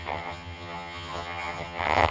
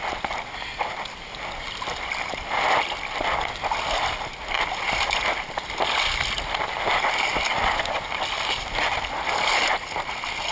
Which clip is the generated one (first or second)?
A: first